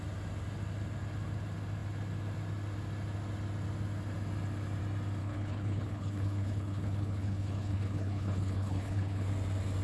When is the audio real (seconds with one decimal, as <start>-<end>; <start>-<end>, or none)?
0.0-5.2; 9.3-9.8